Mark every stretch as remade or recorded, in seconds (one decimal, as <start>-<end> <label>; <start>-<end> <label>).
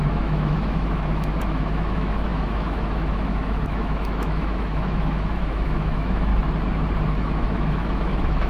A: 0.0-6.3 remade; 6.3-7.1 recorded; 7.1-8.5 remade